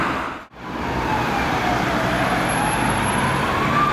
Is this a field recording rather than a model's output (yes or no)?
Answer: yes